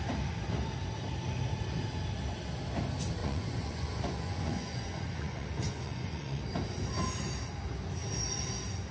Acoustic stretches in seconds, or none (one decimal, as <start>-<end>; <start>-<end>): 0.0-3.2; 6.4-8.9